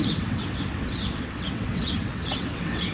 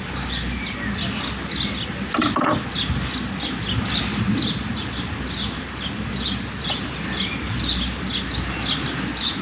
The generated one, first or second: first